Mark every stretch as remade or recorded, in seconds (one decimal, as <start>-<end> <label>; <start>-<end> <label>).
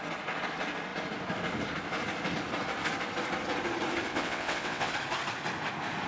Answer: 0.0-4.1 recorded; 4.1-4.9 remade; 4.9-6.1 recorded